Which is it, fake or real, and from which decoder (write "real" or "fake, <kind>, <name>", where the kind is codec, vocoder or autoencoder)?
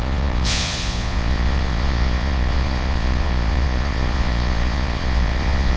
fake, vocoder, Vocos